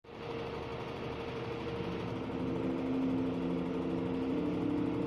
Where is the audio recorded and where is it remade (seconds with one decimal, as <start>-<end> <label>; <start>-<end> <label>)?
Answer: 0.0-5.1 recorded